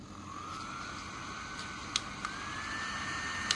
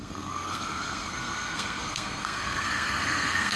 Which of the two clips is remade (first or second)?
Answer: second